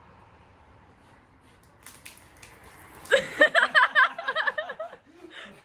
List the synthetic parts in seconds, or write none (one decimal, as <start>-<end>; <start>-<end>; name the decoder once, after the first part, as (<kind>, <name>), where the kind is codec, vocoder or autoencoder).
none